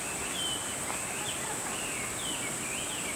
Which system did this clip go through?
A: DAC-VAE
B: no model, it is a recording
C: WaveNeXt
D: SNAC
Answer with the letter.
B